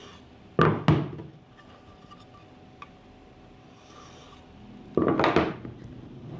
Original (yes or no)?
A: yes